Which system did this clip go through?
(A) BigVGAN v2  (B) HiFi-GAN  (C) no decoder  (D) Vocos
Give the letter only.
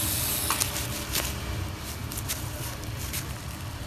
A